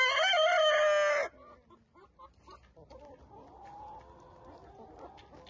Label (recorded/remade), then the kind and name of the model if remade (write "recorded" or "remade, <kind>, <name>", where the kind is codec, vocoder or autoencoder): recorded